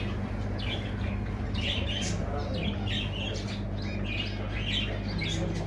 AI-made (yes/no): no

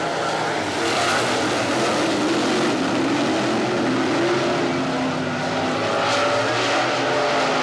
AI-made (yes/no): no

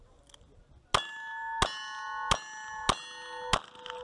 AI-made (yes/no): no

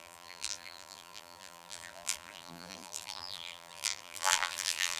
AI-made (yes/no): yes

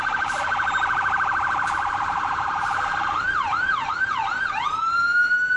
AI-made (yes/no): yes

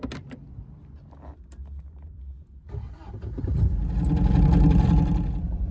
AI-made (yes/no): yes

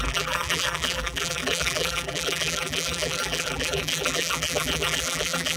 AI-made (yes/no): yes